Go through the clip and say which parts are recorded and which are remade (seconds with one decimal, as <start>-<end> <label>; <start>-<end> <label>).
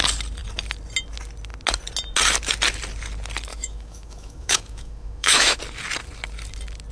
0.0-3.5 recorded; 3.5-5.6 remade; 5.6-6.9 recorded